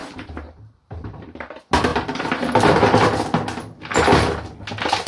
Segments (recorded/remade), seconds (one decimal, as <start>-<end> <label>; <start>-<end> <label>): 0.0-1.5 remade; 1.5-5.1 recorded